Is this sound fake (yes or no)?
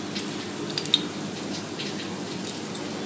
no